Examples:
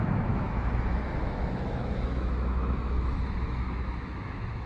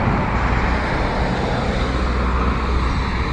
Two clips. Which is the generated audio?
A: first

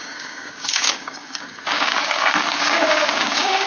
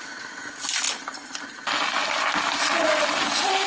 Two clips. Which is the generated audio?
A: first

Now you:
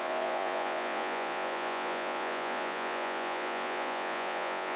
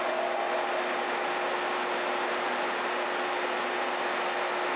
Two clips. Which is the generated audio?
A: first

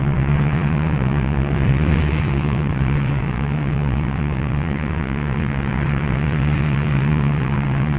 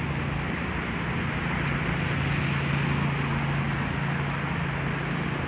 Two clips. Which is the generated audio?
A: first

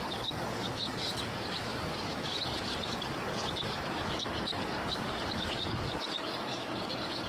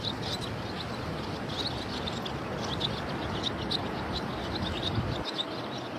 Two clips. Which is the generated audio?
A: first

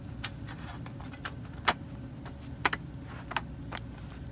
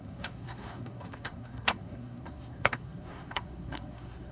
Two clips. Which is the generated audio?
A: second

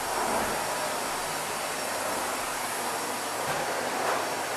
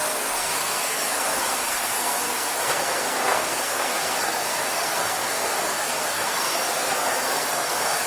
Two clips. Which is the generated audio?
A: second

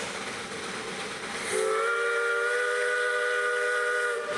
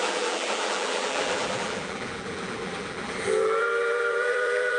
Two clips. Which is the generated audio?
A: second